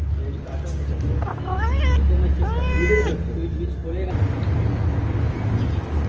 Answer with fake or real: real